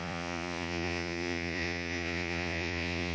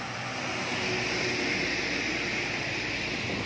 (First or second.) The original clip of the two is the second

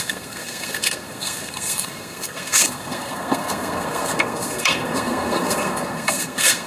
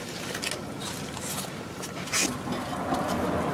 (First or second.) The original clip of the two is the second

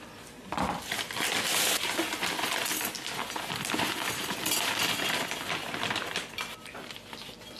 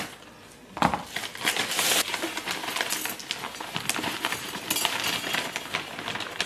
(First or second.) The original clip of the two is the second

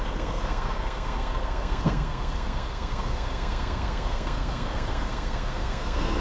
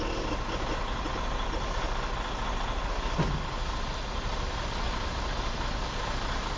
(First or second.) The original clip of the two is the second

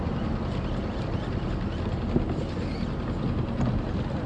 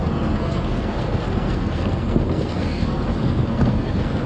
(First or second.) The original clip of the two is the first